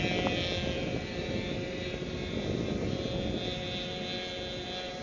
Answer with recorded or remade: recorded